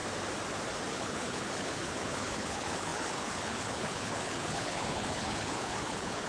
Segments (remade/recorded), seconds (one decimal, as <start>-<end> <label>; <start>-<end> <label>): 0.0-0.9 recorded; 0.9-6.3 remade